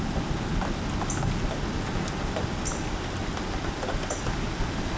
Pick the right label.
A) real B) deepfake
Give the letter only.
A